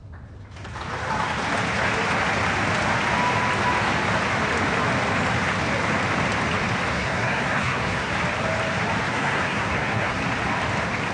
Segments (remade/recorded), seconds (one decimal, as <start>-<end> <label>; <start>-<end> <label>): 0.0-6.9 recorded; 6.9-8.1 remade; 8.1-9.1 recorded; 9.1-10.2 remade; 10.2-11.1 recorded